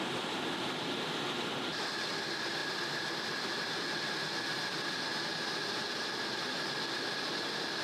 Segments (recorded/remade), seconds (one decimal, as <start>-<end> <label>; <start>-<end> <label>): 0.0-2.6 recorded; 2.6-4.3 remade; 4.3-7.8 recorded